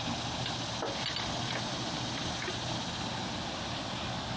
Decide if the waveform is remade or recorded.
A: recorded